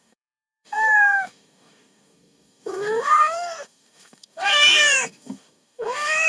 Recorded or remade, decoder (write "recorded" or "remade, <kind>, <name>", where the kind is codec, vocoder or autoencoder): remade, codec, DAC